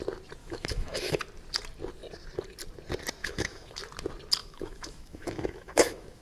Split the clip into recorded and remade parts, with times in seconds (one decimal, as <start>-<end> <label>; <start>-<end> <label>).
0.0-0.4 recorded; 0.4-1.2 remade; 1.2-3.2 recorded; 3.2-3.8 remade; 3.8-4.4 recorded; 4.4-6.2 remade